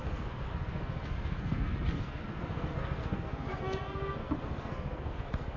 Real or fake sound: fake